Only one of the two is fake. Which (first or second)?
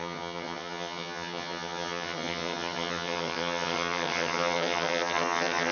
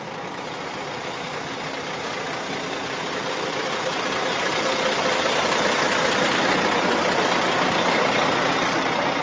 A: first